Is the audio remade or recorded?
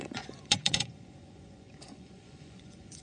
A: remade